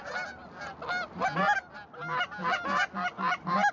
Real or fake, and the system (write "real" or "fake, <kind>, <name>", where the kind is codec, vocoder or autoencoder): real